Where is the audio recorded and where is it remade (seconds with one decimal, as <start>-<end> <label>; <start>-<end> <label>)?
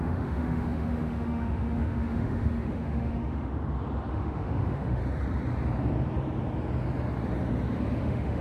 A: 0.0-3.5 remade; 3.5-4.1 recorded; 4.1-5.0 remade; 5.0-8.0 recorded; 8.0-8.4 remade